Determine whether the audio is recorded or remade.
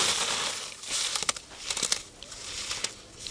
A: recorded